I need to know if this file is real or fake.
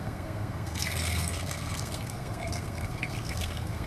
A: fake